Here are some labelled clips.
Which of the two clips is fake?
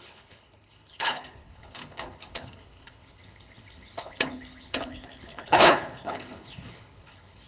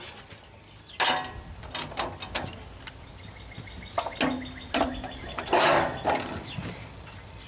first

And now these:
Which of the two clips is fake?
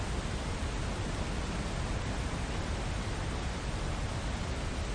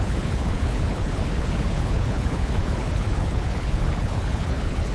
second